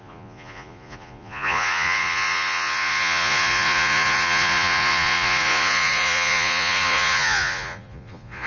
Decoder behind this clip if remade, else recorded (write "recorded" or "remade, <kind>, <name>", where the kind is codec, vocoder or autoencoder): remade, vocoder, Vocos